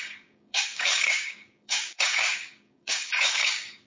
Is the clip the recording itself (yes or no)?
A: no